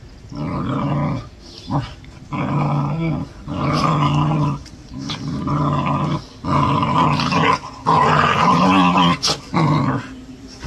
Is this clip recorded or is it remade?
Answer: recorded